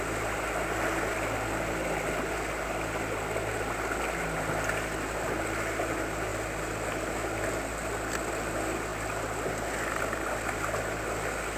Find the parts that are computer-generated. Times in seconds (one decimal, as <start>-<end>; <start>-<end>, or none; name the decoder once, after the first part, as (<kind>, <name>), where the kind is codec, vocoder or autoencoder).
none